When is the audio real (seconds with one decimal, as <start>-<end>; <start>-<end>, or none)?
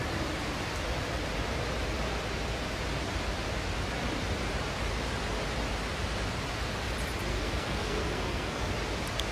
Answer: 0.0-7.3; 8.7-9.3